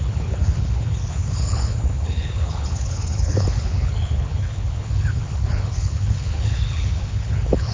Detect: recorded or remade remade